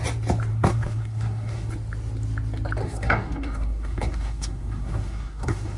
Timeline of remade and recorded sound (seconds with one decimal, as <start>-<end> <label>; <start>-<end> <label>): 0.0-0.5 recorded; 0.5-1.7 remade; 1.7-2.8 recorded; 2.8-5.8 remade